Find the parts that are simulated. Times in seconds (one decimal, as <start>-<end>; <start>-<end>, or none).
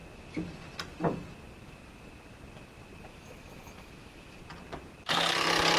3.1-4.4